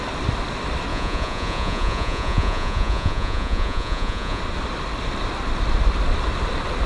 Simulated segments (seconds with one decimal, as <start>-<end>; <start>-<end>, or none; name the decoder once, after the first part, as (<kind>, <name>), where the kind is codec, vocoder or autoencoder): 0.9-4.4 (vocoder, Vocos)